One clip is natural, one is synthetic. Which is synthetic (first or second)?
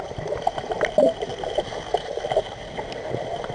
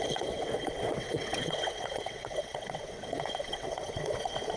second